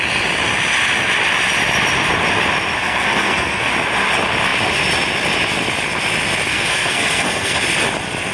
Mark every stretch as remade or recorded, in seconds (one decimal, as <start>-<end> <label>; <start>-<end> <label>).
0.0-2.8 recorded; 2.8-3.7 remade; 3.7-6.5 recorded; 6.5-7.6 remade; 7.6-8.3 recorded